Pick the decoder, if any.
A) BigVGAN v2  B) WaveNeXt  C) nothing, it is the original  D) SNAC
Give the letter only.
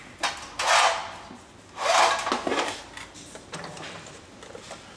C